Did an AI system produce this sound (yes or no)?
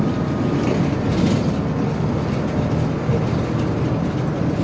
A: no